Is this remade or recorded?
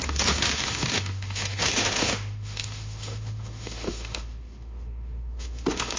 remade